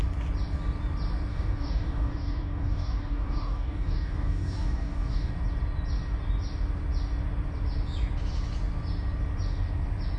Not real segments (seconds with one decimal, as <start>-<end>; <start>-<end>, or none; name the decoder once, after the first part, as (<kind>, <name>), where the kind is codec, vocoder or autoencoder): 1.3-5.3 (codec, DAC)